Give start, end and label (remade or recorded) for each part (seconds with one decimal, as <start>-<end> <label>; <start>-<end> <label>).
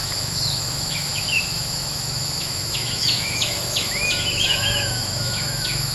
0.0-5.9 remade